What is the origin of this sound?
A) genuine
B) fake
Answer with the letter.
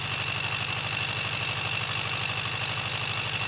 A